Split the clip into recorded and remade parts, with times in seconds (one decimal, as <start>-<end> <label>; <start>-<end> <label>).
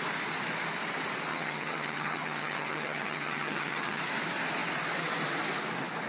0.0-1.3 recorded; 1.3-4.0 remade; 4.0-6.1 recorded